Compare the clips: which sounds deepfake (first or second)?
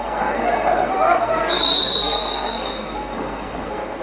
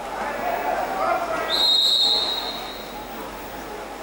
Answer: first